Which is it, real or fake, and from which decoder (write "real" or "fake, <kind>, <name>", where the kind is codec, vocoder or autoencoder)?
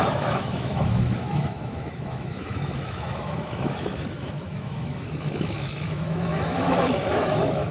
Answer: fake, autoencoder, DAC-VAE